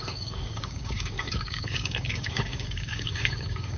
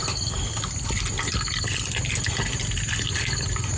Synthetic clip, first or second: first